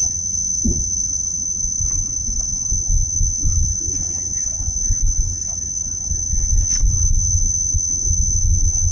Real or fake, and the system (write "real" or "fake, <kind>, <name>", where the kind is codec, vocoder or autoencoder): fake, vocoder, WaveNeXt